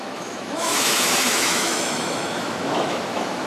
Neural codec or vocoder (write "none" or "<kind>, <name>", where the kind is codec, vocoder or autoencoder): autoencoder, DAC-VAE